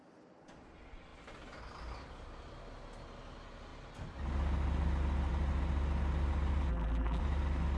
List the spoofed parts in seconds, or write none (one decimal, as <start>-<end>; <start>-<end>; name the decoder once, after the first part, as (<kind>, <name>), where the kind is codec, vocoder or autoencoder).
6.7-7.2 (vocoder, BigVGAN v2)